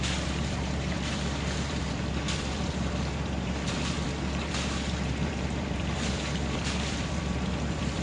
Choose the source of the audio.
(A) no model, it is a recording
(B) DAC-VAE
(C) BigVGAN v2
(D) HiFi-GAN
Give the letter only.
C